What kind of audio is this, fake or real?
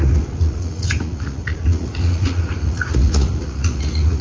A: fake